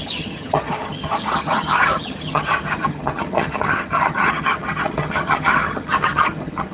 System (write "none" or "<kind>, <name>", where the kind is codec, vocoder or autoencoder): vocoder, HiFi-GAN